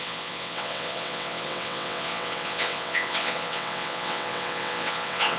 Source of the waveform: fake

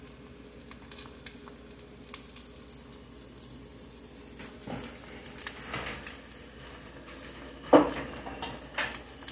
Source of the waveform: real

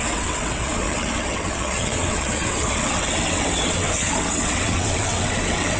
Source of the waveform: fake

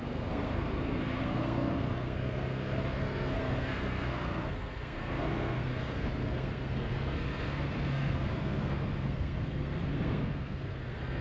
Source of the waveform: fake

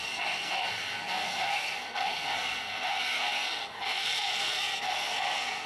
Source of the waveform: fake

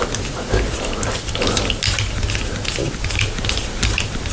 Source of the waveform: real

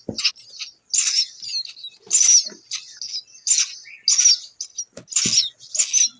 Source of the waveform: real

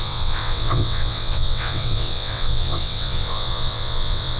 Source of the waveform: fake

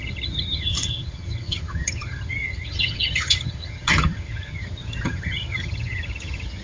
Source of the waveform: fake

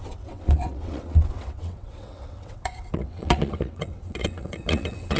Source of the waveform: fake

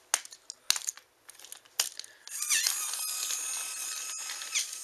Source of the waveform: real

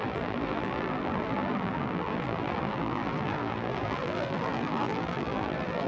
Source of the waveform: fake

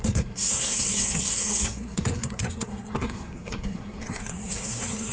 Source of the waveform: fake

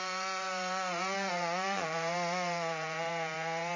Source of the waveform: fake